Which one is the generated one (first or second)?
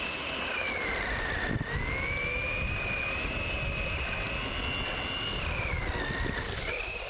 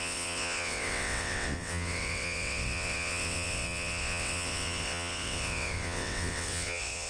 second